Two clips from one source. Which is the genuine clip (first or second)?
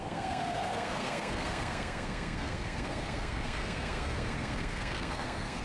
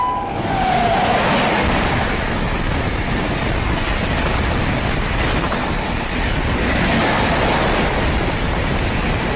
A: second